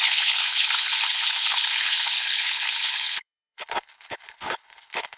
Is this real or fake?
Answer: fake